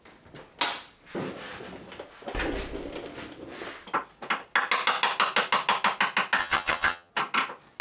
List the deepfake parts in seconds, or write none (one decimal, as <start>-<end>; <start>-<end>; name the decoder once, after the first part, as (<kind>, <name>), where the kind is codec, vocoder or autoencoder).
6.4-7.1 (vocoder, HiFi-GAN)